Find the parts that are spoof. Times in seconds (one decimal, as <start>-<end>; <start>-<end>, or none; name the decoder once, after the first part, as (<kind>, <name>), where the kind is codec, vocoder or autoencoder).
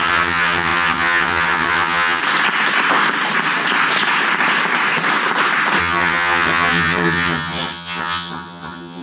0.0-2.2 (vocoder, HiFi-GAN); 5.8-9.0